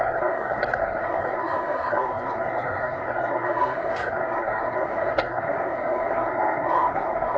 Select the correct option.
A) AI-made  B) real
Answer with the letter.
A